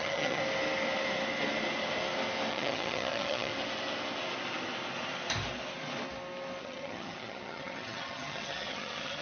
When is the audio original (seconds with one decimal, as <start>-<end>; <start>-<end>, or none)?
0.4-2.5; 3.5-6.6